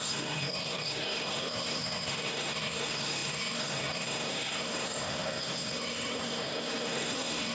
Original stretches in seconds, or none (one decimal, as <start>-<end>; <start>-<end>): none